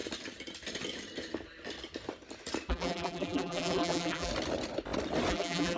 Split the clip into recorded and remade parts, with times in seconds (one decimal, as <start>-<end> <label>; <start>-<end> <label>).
0.0-2.7 recorded; 2.7-4.3 remade; 4.3-5.3 recorded; 5.3-5.8 remade